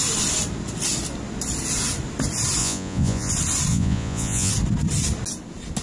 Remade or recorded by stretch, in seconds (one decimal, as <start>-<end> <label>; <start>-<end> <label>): 0.0-2.6 recorded; 2.6-3.3 remade; 3.3-3.7 recorded; 3.7-4.5 remade; 4.5-5.8 recorded